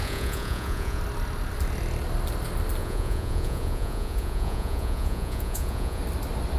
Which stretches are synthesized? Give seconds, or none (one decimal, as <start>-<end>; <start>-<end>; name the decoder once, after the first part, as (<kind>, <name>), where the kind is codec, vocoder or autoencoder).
0.0-1.0 (vocoder, Vocos); 2.8-6.0

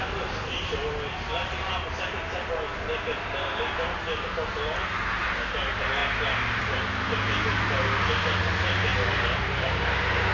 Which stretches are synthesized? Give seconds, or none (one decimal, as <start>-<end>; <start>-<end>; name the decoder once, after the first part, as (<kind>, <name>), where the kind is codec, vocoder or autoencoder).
none

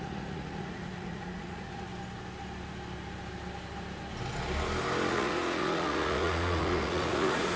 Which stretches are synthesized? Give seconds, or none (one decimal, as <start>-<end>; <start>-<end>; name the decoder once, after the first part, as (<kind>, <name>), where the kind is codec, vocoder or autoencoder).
0.0-1.9 (vocoder, Vocos); 5.1-7.6

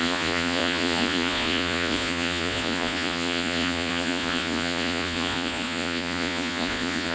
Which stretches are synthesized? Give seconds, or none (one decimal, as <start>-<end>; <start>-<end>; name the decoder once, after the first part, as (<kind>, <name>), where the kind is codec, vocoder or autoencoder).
0.0-7.1 (vocoder, Vocos)